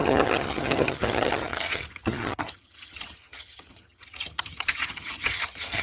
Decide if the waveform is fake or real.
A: fake